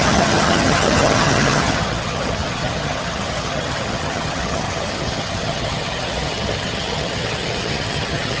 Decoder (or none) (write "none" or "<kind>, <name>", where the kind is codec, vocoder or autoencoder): vocoder, HiFi-GAN